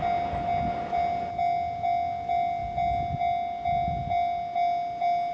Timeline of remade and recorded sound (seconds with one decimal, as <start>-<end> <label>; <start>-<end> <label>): 0.0-5.3 recorded